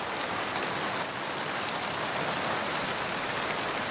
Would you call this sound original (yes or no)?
yes